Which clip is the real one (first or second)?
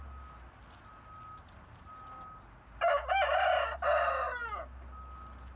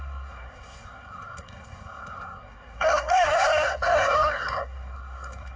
first